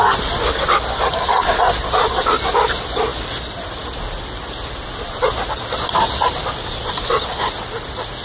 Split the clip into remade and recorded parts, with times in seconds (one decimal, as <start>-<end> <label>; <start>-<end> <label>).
0.0-8.2 recorded